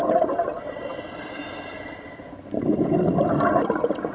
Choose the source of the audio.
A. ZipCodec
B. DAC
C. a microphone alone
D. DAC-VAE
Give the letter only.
C